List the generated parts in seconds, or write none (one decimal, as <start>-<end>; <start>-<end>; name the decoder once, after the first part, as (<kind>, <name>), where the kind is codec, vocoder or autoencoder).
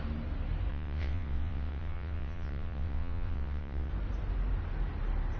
0.7-3.9 (vocoder, WaveNeXt)